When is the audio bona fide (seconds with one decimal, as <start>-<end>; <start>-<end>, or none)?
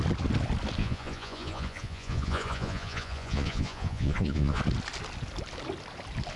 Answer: 0.0-0.8; 4.6-6.4